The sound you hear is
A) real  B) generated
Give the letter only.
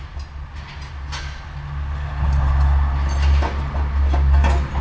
A